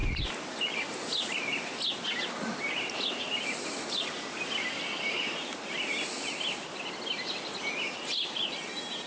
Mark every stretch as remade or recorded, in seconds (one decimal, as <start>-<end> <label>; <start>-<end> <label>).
0.0-9.1 recorded